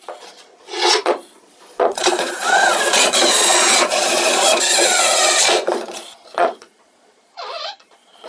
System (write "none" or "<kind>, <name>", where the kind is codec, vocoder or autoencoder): vocoder, Vocos